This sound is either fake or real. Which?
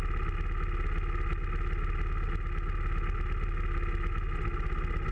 real